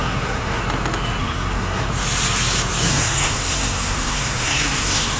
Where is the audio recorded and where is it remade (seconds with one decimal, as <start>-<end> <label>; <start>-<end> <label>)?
0.0-0.6 remade; 0.6-1.2 recorded; 1.2-1.9 remade; 1.9-2.9 recorded; 2.9-5.2 remade